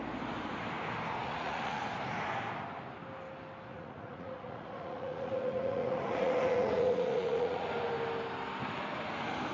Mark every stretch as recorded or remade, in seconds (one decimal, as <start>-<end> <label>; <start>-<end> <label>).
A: 0.0-1.2 recorded; 1.2-1.8 remade; 1.8-3.7 recorded; 3.7-7.7 remade; 7.7-9.5 recorded